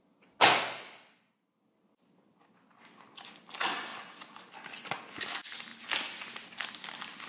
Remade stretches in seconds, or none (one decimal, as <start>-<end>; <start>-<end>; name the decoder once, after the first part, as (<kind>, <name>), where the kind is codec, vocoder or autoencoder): none